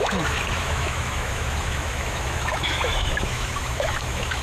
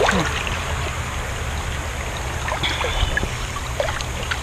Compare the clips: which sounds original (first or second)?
second